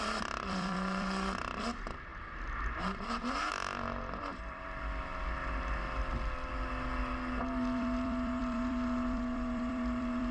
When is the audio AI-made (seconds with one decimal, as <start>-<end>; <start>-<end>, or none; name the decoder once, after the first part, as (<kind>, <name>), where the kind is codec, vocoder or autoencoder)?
0.0-2.1 (vocoder, BigVGAN v2); 2.8-5.1; 7.8-10.3